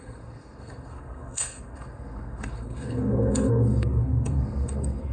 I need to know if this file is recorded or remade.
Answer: remade